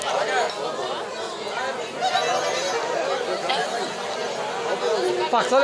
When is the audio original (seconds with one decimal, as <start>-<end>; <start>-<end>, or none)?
0.0-5.6